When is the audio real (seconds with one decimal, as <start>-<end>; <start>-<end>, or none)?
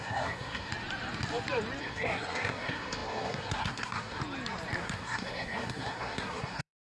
0.7-1.8; 4.2-4.8